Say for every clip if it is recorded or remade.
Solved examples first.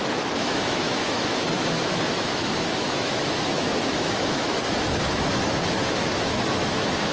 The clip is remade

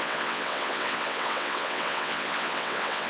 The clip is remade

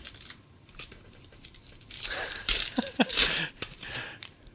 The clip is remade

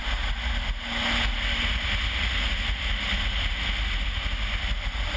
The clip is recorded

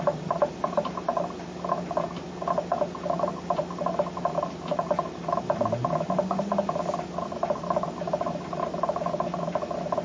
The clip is recorded